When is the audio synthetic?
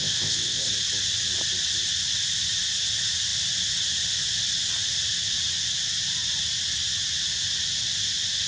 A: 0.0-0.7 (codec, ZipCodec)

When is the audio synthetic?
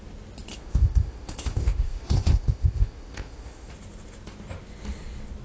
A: 0.5-3.7 (codec, ZipCodec)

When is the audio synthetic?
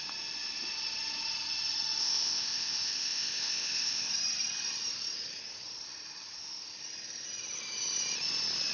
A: 2.0-4.1 (codec, ZipCodec)